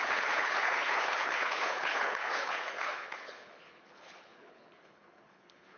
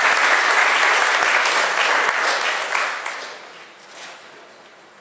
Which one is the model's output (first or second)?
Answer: first